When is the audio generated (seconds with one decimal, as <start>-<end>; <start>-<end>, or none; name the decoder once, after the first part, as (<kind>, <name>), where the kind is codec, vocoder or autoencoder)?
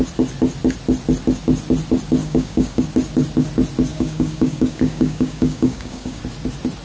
2.2-2.8 (codec, DAC); 3.9-6.2